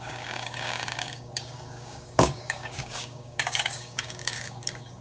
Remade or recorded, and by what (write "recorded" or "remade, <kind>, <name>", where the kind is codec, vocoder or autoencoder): remade, codec, DAC